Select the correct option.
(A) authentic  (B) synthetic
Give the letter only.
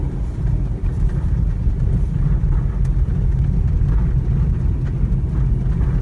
A